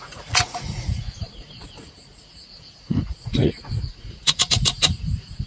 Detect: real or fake fake